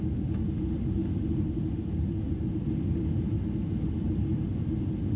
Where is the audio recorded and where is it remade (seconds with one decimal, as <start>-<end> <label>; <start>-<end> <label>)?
0.0-5.2 recorded